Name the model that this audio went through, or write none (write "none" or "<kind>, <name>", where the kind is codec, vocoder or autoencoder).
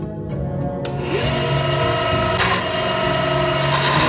none